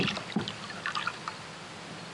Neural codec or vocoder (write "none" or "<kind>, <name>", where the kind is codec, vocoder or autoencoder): none